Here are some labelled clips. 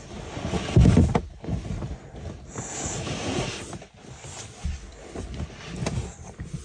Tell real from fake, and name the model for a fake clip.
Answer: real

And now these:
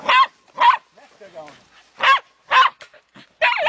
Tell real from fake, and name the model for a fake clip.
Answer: real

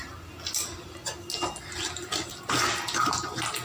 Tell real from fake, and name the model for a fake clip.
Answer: real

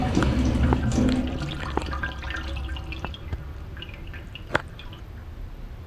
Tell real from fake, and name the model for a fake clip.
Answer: fake, vocoder, BigVGAN v2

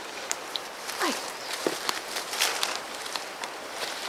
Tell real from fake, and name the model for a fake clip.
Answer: fake, vocoder, BigVGAN v2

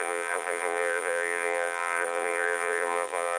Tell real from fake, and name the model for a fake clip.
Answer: fake, vocoder, BigVGAN v2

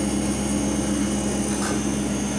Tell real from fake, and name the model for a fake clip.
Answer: real